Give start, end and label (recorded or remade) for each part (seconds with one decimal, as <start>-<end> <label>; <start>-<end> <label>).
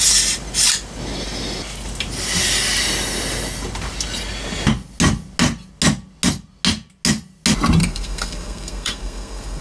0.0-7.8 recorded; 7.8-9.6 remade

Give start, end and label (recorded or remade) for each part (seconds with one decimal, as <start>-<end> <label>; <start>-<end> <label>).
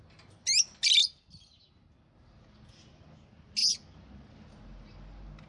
0.0-1.0 recorded; 1.0-1.7 remade; 1.7-5.5 recorded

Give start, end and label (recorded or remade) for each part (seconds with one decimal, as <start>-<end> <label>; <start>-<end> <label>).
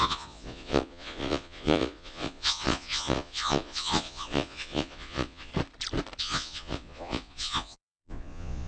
0.0-5.5 remade; 5.5-6.2 recorded; 6.2-8.7 remade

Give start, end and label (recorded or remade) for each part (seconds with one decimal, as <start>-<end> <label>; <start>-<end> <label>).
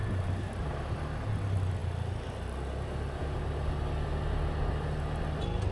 0.0-0.7 remade; 0.7-5.7 recorded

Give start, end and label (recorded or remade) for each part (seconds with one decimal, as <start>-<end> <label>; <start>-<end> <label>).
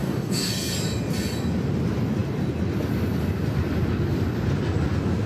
0.0-0.5 remade; 0.5-5.3 recorded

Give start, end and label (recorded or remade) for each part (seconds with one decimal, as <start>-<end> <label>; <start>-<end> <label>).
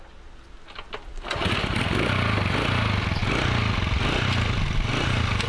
0.0-5.5 recorded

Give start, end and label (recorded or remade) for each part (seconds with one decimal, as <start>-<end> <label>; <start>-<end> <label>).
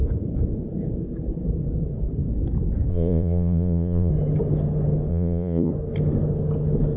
0.0-2.9 recorded; 2.9-4.1 remade; 4.1-5.1 recorded; 5.1-5.7 remade; 5.7-7.0 recorded